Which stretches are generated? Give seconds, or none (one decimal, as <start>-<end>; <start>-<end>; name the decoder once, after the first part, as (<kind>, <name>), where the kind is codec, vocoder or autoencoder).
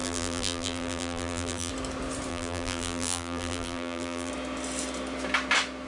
0.0-1.7 (vocoder, BigVGAN v2); 2.3-4.3